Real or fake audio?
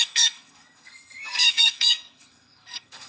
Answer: fake